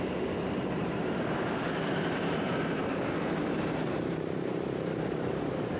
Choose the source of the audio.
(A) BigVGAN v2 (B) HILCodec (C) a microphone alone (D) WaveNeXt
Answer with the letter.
A